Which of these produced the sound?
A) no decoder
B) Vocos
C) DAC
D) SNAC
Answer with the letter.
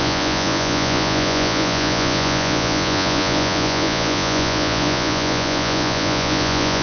B